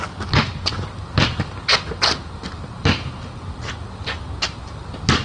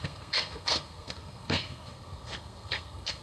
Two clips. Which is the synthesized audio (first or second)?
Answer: second